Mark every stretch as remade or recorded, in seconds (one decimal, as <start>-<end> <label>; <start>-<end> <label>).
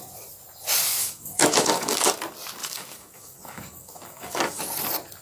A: 0.0-1.0 recorded; 1.0-2.1 remade; 2.1-2.6 recorded; 2.6-4.6 remade; 4.6-5.2 recorded